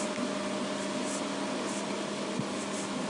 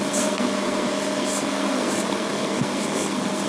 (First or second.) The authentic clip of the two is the first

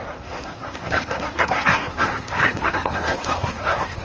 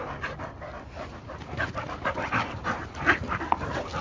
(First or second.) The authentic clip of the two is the second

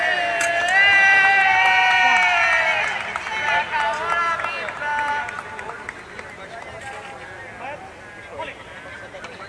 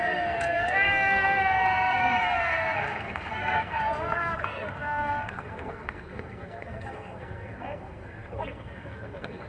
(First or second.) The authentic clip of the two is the first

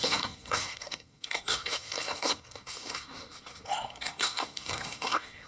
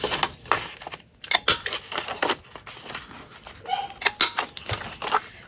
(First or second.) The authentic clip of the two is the second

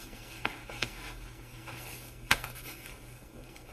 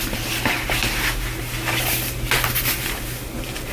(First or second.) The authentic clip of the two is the second